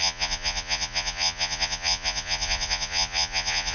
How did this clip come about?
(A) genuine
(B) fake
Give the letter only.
B